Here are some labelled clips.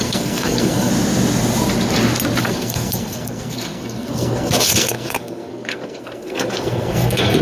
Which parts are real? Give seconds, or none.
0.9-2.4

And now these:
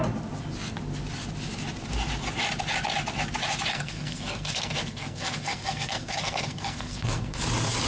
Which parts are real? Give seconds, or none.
0.0-3.7; 7.4-7.9

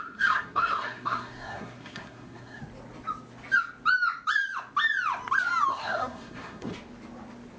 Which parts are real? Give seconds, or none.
2.6-5.7; 6.7-7.6

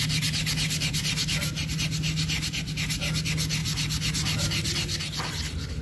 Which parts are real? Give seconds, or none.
0.0-5.8

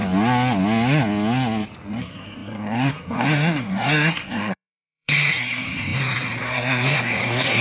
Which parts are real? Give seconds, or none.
0.0-2.0

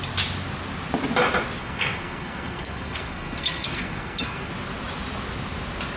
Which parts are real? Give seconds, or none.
0.0-1.6; 4.5-6.0

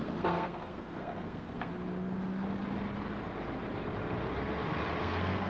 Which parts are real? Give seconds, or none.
1.7-5.0

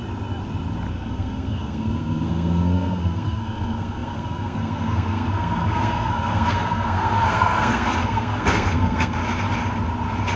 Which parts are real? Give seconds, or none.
0.0-0.9; 9.2-10.4